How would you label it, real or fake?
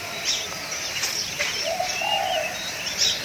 fake